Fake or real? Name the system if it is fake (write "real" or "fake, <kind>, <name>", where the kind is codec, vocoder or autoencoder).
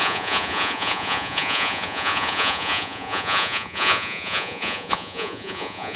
fake, vocoder, Vocos